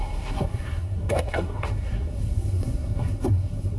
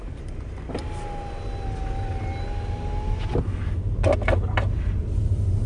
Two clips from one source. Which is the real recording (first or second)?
second